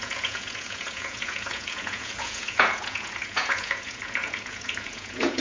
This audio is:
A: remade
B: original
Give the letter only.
A